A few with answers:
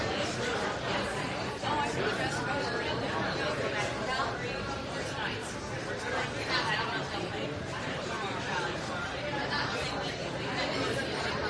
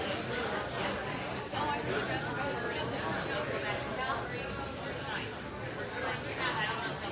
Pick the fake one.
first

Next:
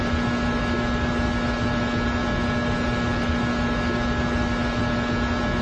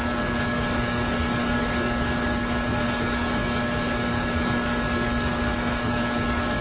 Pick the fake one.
second